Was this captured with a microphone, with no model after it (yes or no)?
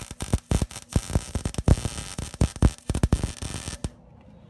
yes